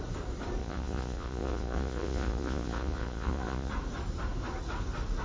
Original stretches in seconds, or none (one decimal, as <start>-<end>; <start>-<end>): 0.0-0.6; 3.7-5.2